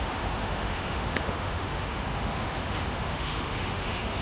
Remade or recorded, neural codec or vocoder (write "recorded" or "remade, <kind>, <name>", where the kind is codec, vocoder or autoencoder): remade, autoencoder, DAC-VAE